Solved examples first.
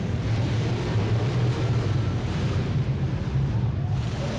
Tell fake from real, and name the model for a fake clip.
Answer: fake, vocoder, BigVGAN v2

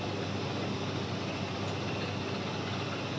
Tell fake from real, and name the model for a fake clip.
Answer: real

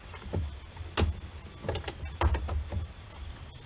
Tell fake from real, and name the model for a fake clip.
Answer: real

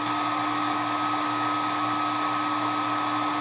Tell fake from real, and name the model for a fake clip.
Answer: real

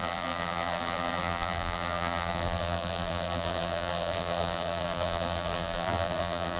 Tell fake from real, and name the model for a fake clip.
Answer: fake, vocoder, BigVGAN v2